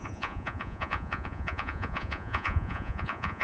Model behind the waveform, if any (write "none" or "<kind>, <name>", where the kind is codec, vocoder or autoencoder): vocoder, Vocos